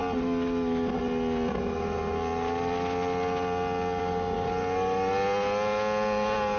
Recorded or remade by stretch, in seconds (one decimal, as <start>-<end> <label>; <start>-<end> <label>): 0.0-6.6 recorded